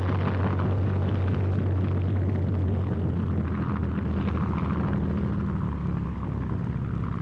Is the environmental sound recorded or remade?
recorded